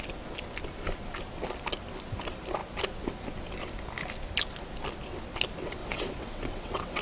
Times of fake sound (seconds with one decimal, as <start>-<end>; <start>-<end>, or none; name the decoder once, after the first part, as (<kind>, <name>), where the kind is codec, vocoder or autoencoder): 5.8-7.0 (vocoder, WaveNeXt)